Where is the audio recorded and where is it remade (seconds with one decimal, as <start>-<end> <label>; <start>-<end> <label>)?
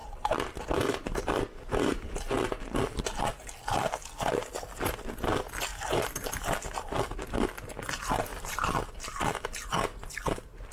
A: 0.0-2.2 remade; 2.2-5.7 recorded; 5.7-6.3 remade; 6.3-8.3 recorded; 8.3-8.9 remade; 8.9-10.7 recorded